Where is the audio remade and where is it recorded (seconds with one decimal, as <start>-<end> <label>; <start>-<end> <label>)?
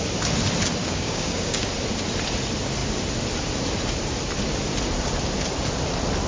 0.0-0.8 recorded; 0.8-1.7 remade; 1.7-6.3 recorded